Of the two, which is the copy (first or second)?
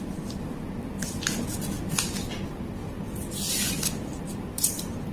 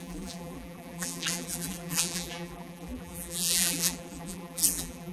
second